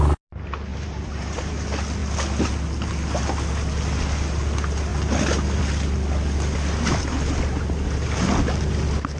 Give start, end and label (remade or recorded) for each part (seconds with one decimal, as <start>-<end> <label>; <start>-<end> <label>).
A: 0.0-0.7 recorded; 0.7-1.5 remade; 1.5-9.2 recorded